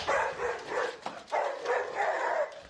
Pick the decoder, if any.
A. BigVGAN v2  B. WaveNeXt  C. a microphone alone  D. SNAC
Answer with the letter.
A